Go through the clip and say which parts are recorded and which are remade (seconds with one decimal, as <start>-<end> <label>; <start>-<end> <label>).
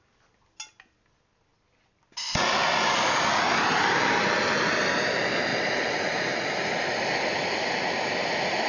0.0-8.7 recorded